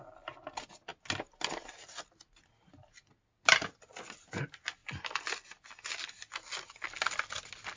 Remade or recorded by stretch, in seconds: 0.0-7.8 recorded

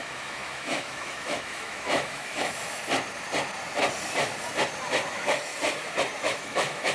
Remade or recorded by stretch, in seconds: 0.0-2.8 remade; 2.8-5.1 recorded; 5.1-5.5 remade; 5.5-6.2 recorded; 6.2-6.9 remade

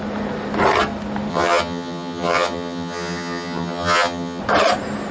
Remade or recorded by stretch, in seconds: 0.0-1.3 recorded; 1.3-4.4 remade; 4.4-5.1 recorded